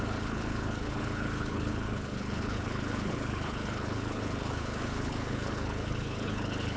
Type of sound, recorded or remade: remade